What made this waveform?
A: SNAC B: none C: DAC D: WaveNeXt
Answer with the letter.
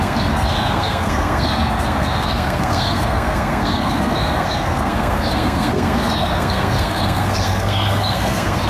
A